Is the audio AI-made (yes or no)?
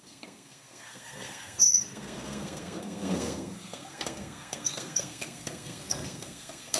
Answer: yes